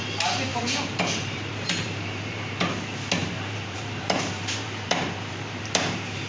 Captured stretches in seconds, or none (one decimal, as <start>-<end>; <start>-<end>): 0.0-0.5; 2.6-3.2